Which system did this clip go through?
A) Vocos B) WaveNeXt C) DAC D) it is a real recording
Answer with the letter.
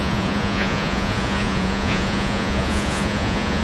A